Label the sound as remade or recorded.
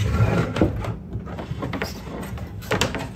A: recorded